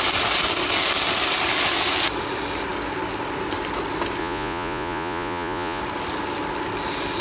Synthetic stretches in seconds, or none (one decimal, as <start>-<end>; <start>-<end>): 4.2-5.8